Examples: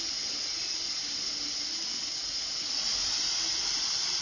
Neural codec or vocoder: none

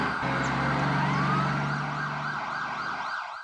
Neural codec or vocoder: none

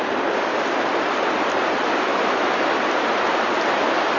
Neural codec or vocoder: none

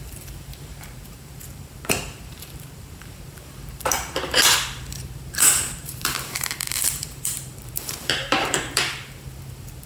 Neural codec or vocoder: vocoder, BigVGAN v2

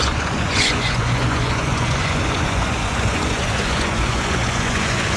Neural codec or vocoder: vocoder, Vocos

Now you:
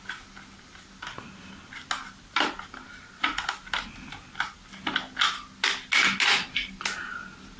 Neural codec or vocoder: none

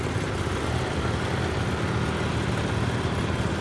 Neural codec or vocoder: none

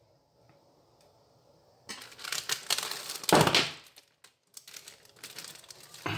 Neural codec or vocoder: none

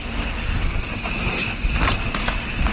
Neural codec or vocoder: none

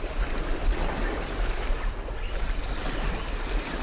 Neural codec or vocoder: none